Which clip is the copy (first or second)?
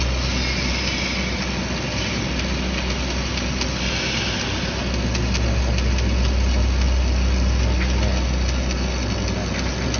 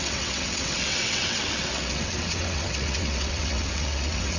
second